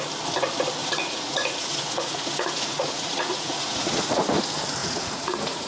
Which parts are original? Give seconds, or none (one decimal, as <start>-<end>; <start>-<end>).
0.0-0.8; 4.2-4.8